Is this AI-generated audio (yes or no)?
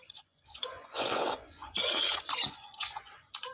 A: yes